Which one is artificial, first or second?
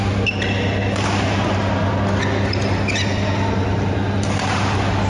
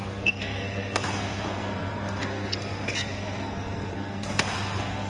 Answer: second